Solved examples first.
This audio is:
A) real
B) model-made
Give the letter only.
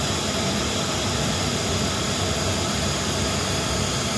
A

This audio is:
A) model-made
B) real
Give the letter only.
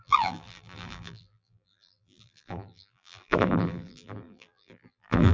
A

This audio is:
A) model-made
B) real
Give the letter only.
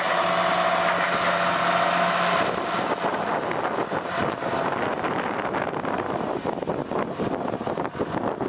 B